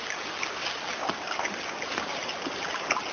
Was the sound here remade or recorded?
recorded